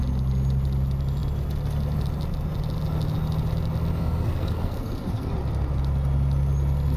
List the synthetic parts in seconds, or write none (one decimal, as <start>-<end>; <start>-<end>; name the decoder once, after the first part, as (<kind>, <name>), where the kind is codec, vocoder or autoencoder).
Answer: 4.0-5.3 (codec, SNAC)